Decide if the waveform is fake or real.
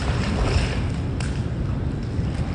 real